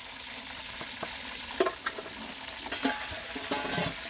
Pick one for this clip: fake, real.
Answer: real